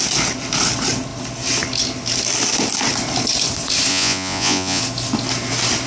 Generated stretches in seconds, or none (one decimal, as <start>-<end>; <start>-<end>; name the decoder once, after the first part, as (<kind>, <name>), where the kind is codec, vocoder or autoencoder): 3.9-4.8 (vocoder, Vocos)